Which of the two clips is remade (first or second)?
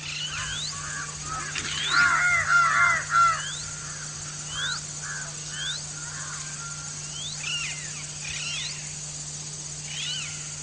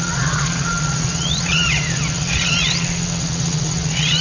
second